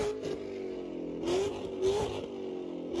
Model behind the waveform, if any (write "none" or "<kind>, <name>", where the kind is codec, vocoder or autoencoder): none